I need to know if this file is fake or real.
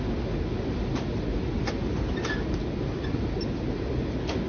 real